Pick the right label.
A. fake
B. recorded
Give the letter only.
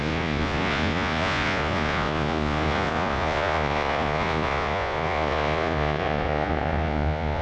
A